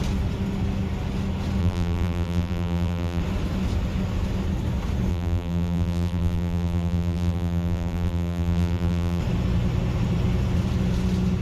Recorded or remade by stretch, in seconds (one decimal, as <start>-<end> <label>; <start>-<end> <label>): 0.0-1.6 recorded; 1.6-3.2 remade; 3.2-5.1 recorded; 5.1-9.2 remade; 9.2-11.4 recorded